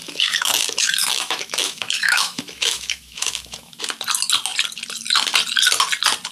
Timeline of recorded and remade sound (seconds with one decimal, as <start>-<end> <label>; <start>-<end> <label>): 0.0-3.8 remade; 3.8-6.3 recorded